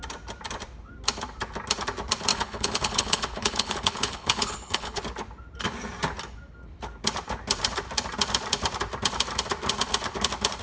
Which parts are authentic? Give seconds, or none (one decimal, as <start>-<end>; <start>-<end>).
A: 0.0-2.3; 5.0-10.6